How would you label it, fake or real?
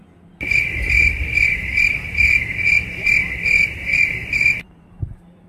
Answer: fake